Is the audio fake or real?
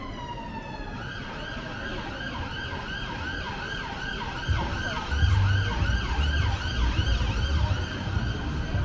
real